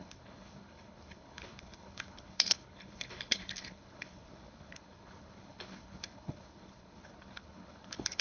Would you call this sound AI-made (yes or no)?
yes